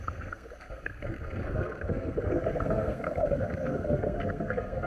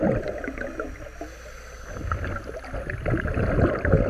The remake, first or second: first